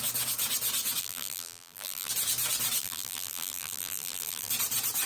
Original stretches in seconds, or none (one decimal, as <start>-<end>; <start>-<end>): 0.0-1.0; 2.1-2.8; 4.5-5.1